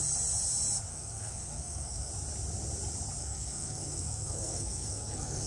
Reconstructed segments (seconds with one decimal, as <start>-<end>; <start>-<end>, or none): 0.9-2.1; 3.2-5.5